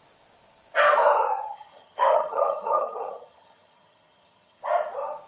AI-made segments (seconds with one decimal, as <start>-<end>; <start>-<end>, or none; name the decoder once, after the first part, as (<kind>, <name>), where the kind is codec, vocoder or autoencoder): 1.4-4.6 (vocoder, HiFi-GAN)